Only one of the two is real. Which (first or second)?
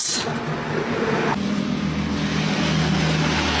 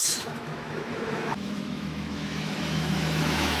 first